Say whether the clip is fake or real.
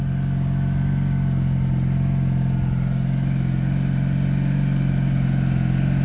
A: real